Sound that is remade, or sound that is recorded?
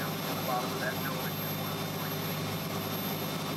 recorded